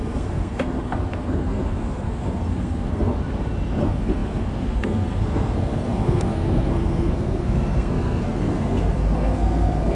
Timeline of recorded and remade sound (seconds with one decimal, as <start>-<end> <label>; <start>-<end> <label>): 0.0-3.1 remade; 3.1-3.8 recorded; 3.8-9.9 remade